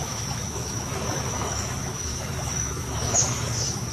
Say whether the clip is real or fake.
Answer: fake